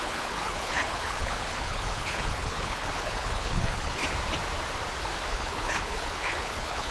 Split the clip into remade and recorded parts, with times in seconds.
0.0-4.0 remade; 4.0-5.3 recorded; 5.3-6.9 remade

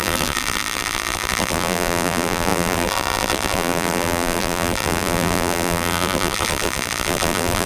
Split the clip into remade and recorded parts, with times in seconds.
0.0-7.7 remade